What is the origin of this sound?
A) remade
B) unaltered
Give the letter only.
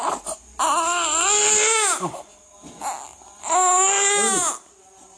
B